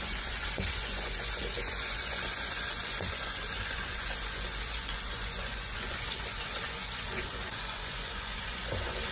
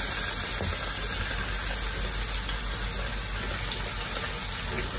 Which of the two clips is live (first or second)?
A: second